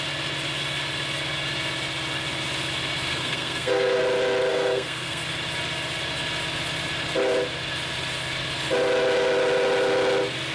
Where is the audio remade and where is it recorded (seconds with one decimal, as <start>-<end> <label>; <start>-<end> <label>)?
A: 0.0-3.1 recorded; 3.1-4.0 remade; 4.0-4.5 recorded; 4.5-5.2 remade; 5.2-10.5 recorded